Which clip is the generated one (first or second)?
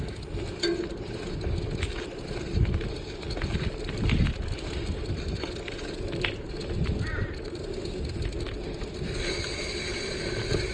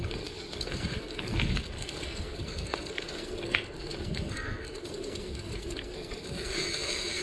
second